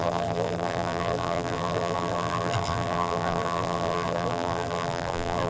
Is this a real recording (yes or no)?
no